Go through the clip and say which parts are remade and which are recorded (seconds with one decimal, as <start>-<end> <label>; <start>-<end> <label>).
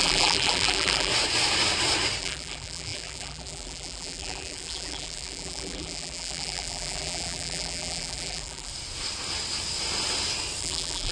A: 0.0-1.1 remade; 1.1-2.2 recorded; 2.2-8.7 remade; 8.7-10.6 recorded; 10.6-11.1 remade